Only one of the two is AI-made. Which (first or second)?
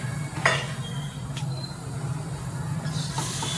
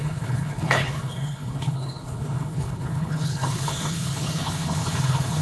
second